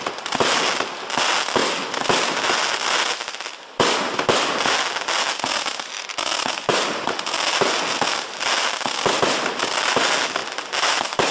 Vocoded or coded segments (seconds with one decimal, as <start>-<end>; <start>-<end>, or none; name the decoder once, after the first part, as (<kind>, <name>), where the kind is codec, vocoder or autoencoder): none